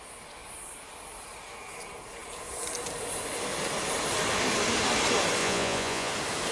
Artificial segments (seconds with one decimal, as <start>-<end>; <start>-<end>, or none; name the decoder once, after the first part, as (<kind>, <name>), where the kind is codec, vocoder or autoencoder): 5.4-6.1 (vocoder, Vocos)